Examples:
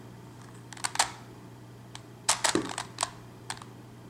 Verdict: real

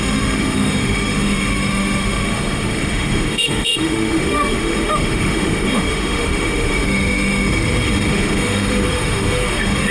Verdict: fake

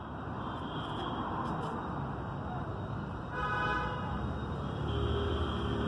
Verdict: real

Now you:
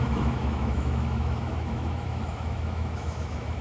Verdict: fake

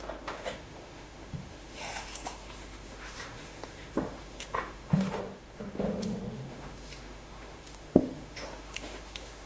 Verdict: fake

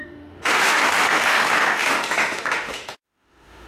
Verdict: fake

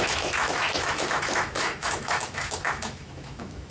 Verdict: fake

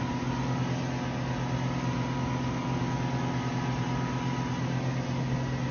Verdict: real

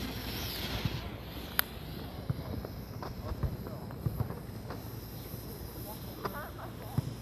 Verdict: real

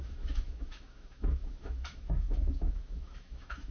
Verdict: fake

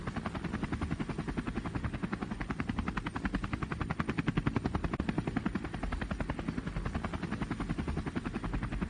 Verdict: real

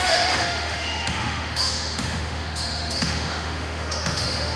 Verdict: fake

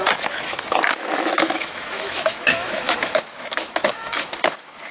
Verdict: fake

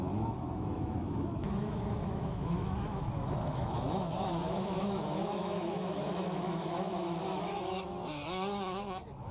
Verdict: fake